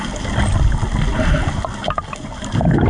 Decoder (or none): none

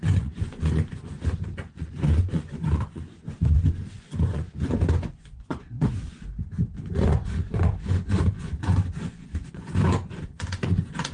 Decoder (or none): vocoder, Vocos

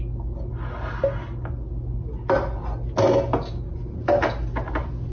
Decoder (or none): none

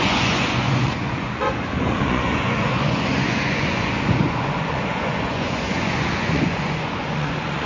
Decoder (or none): vocoder, Vocos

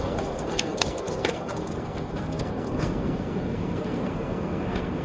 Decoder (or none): codec, SNAC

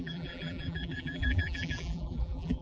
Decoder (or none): vocoder, BigVGAN v2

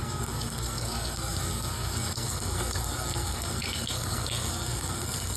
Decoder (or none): codec, SNAC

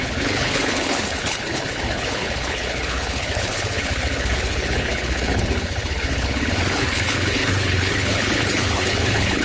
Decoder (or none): codec, HILCodec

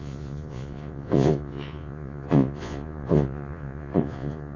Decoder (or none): vocoder, Vocos